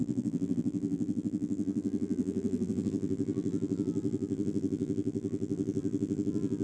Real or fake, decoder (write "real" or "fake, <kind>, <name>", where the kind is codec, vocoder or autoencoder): fake, vocoder, BigVGAN v2